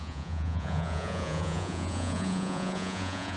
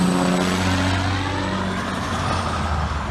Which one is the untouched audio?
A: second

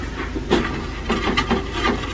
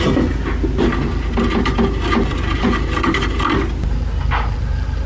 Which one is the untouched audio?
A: second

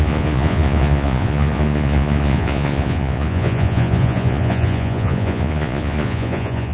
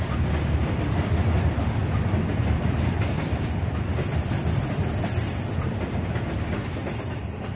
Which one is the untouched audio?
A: second